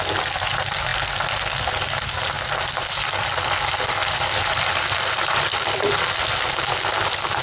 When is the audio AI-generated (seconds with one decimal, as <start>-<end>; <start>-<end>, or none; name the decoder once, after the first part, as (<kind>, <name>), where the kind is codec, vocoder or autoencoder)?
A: none